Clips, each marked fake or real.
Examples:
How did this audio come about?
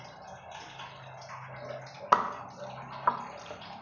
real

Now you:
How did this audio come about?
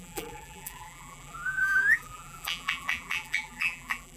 fake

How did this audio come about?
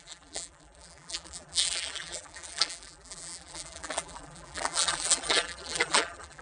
fake